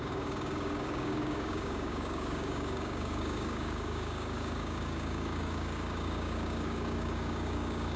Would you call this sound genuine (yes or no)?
no